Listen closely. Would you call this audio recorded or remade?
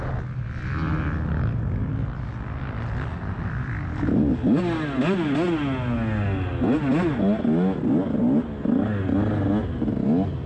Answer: recorded